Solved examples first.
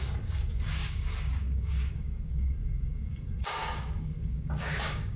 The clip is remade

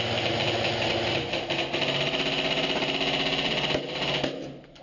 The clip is recorded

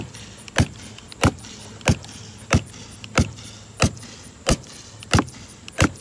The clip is recorded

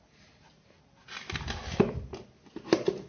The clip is recorded